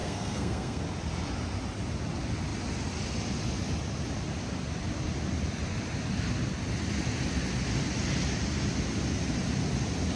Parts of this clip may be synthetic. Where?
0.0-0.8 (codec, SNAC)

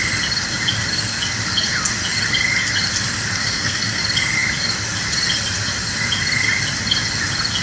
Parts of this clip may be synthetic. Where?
3.4-4.0 (codec, SNAC)

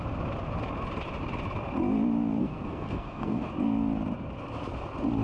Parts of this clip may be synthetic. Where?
2.4-3.5 (codec, SNAC)